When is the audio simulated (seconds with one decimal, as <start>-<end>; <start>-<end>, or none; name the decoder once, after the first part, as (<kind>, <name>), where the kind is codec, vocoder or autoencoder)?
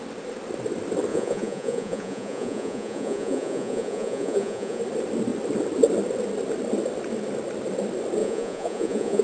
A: 1.1-4.8 (vocoder, Vocos); 8.2-9.2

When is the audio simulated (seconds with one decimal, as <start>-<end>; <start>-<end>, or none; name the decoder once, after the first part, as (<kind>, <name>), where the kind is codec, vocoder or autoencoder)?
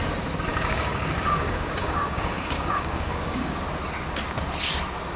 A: 0.5-3.6 (codec, DAC)